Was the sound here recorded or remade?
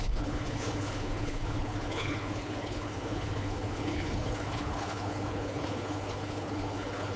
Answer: remade